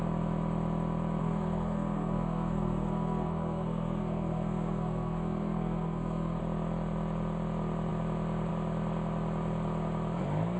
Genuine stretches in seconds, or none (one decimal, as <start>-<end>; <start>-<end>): 0.0-1.2; 6.4-10.6